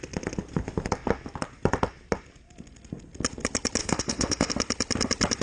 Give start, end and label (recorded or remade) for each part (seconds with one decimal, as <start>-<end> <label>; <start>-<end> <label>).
0.0-3.8 recorded; 3.8-4.5 remade; 4.5-5.4 recorded